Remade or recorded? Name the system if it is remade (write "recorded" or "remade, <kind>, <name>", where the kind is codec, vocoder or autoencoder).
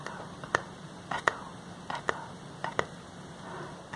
recorded